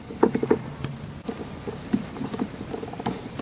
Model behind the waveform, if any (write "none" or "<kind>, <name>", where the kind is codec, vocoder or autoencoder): vocoder, BigVGAN v2